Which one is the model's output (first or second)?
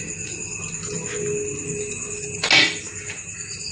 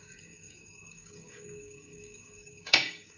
second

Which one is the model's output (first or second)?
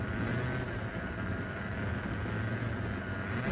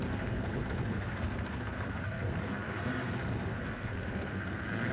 second